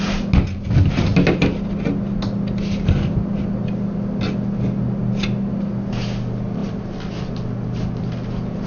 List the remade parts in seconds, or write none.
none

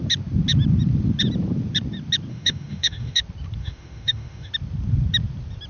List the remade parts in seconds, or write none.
2.3-3.2 (autoencoder, DAC-VAE); 3.6-4.5

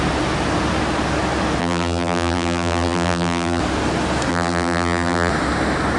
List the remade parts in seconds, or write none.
1.6-3.6 (vocoder, BigVGAN v2); 4.3-5.3

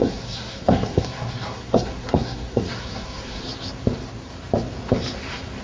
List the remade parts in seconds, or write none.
0.0-3.4 (codec, SNAC)